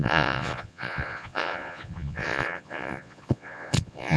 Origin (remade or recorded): remade